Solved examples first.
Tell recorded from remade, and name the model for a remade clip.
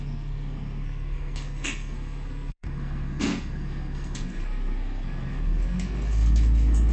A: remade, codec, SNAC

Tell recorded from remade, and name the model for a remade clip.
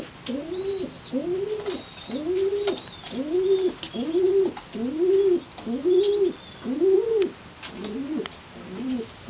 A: recorded